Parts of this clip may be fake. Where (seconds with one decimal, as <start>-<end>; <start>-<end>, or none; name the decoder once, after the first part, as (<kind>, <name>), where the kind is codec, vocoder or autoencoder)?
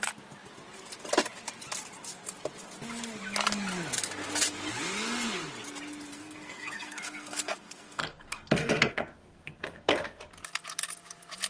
6.1-10.2 (codec, SNAC)